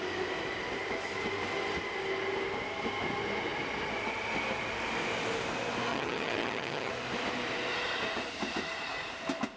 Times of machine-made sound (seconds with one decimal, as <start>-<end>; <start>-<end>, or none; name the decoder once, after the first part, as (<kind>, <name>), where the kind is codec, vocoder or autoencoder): 5.9-6.9 (vocoder, HiFi-GAN)